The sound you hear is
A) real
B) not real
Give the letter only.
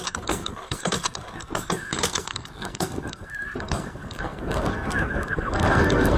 B